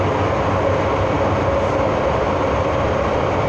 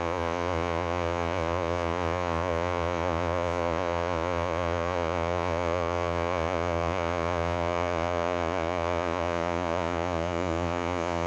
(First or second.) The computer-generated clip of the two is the second